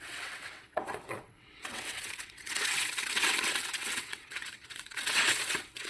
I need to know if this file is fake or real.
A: fake